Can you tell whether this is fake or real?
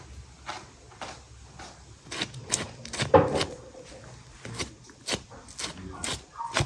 real